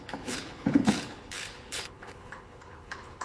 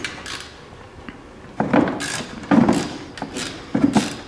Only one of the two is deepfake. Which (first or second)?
first